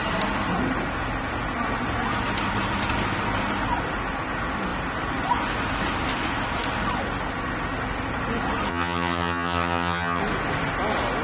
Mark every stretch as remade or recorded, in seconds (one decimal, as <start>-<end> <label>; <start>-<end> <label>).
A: 0.0-8.7 recorded; 8.7-10.2 remade; 10.2-11.2 recorded